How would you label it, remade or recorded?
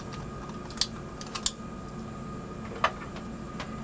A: recorded